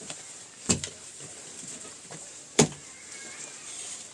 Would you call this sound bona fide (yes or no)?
no